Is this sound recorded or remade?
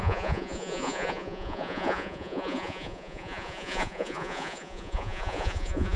remade